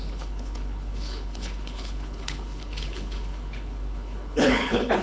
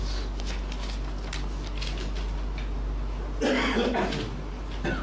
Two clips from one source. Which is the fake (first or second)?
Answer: first